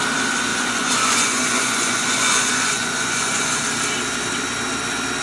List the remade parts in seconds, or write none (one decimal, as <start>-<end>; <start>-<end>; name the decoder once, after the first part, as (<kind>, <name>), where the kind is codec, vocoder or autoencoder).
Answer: 0.5-3.6 (vocoder, Vocos)